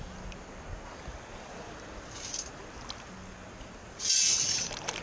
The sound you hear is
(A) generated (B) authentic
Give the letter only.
B